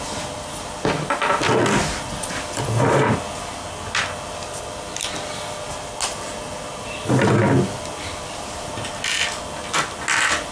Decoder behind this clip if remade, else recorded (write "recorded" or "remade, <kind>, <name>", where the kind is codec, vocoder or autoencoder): recorded